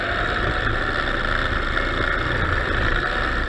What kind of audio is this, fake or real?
real